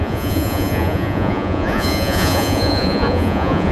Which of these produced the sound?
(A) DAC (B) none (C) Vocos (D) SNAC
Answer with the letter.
C